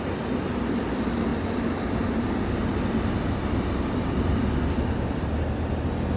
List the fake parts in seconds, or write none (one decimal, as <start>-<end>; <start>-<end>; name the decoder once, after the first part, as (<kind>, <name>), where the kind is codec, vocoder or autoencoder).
none